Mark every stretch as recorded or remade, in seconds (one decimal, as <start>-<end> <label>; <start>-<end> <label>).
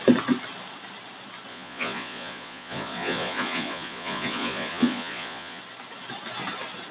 0.0-1.5 recorded; 1.5-5.6 remade; 5.6-6.9 recorded